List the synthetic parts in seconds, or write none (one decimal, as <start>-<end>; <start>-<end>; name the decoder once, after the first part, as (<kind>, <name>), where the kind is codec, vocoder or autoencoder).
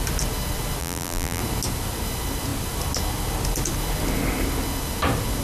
0.8-1.4 (vocoder, BigVGAN v2)